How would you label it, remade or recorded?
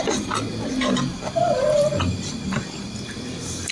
recorded